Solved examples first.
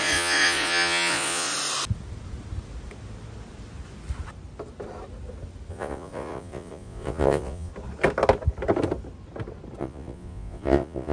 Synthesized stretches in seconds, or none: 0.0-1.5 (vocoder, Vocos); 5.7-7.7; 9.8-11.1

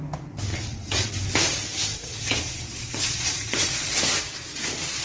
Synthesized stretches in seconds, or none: 0.5-1.1 (vocoder, Vocos); 1.9-3.9